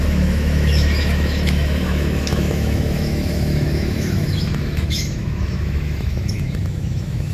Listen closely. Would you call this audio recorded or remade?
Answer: remade